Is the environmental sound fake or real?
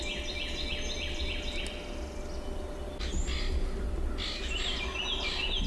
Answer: real